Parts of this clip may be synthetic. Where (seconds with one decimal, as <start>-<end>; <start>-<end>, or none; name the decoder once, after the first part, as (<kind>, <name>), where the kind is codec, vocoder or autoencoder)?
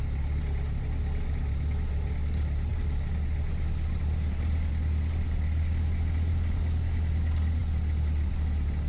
none